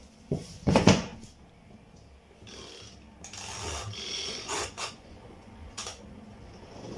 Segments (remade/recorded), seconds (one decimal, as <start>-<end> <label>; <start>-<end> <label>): 0.0-1.1 remade; 1.1-4.1 recorded; 4.1-7.0 remade